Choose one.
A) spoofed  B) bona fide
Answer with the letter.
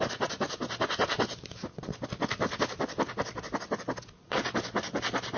B